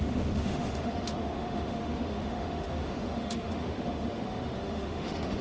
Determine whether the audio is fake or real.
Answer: fake